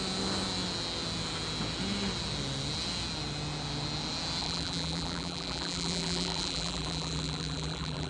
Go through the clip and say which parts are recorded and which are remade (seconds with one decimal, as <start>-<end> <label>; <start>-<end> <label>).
0.0-4.4 recorded; 4.4-8.1 remade